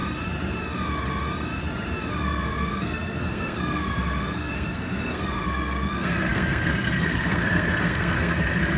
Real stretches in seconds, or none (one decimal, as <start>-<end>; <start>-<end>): 0.0-2.1